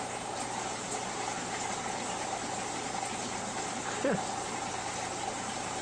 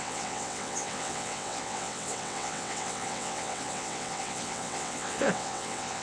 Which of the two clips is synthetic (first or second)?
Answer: second